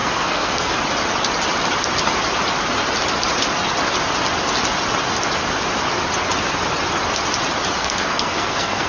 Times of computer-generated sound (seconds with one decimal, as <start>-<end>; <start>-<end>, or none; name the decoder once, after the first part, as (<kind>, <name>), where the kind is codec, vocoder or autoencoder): 0.0-0.7 (codec, SNAC); 7.8-8.9